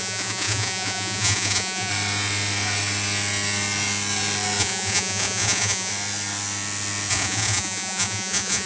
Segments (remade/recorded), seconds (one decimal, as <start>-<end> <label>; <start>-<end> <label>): 0.0-1.9 remade; 1.9-4.6 recorded; 4.6-5.9 remade; 5.9-7.1 recorded; 7.1-8.7 remade